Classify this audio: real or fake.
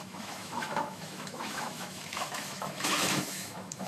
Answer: fake